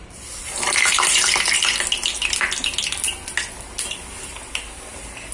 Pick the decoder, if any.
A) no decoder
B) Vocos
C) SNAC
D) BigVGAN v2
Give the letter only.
A